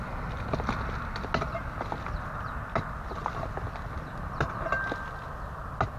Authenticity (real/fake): real